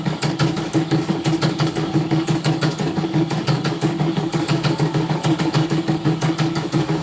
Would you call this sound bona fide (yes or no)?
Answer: no